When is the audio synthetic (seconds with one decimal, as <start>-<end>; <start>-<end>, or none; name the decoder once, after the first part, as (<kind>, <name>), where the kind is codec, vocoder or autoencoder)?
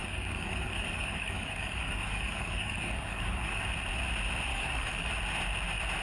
0.0-3.6 (codec, DAC); 4.5-5.1